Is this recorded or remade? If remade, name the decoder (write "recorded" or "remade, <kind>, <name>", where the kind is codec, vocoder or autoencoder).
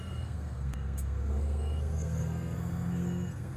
remade, codec, SNAC